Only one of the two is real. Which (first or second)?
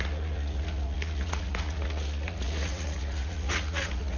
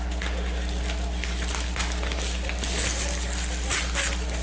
second